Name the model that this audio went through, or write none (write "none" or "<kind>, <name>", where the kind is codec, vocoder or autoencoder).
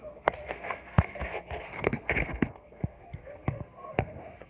codec, SNAC